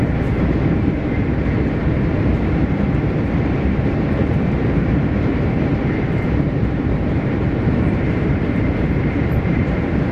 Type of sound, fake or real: fake